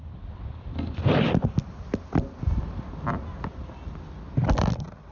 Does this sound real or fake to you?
real